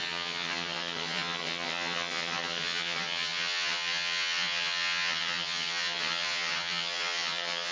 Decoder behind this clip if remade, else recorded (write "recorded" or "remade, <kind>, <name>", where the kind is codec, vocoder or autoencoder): remade, vocoder, HiFi-GAN